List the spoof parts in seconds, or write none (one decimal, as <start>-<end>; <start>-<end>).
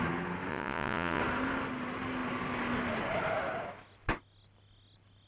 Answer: 0.5-1.2